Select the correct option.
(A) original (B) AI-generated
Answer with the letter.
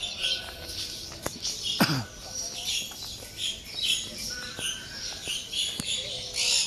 A